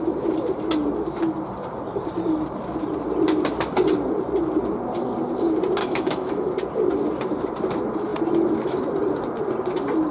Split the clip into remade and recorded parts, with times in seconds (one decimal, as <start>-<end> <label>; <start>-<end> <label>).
0.0-5.8 recorded; 5.8-6.5 remade; 6.5-10.1 recorded